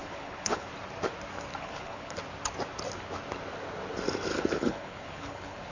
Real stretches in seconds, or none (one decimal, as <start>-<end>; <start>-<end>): 0.7-1.5; 2.2-4.3